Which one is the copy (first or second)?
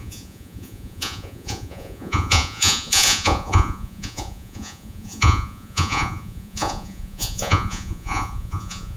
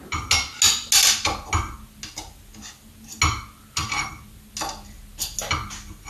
first